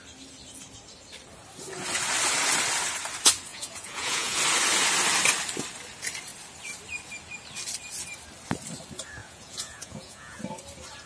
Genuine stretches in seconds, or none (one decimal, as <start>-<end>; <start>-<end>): 0.0-3.5; 4.4-9.2; 10.4-11.1